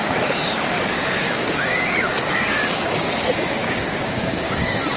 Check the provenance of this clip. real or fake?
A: fake